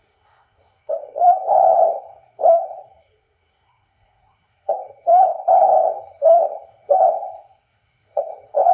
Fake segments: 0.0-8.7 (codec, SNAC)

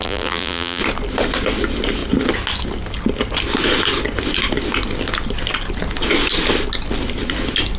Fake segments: 0.0-0.8 (vocoder, BigVGAN v2)

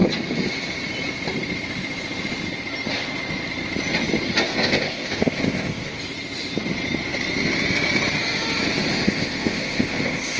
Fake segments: 4.5-6.0 (codec, ZipCodec); 8.9-10.4

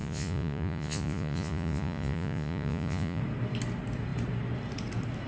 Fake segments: 0.0-3.2 (vocoder, Vocos)

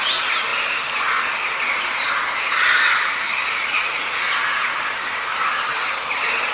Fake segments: 3.4-4.2 (vocoder, Vocos)

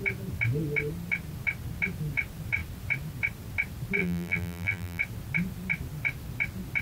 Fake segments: 4.0-5.0 (vocoder, BigVGAN v2)